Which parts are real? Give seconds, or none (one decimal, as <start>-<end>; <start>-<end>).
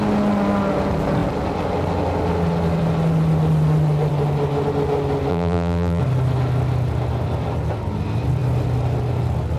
0.0-5.3; 6.0-9.6